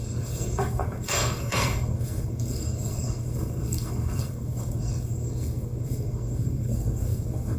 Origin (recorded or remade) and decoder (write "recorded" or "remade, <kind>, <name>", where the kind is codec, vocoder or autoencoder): remade, codec, SNAC